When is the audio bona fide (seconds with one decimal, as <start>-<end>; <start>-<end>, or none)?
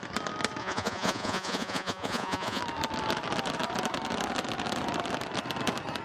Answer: 0.0-0.6; 2.6-6.0